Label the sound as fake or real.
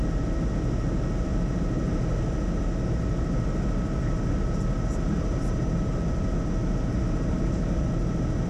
real